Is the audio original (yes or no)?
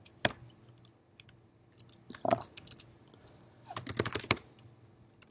yes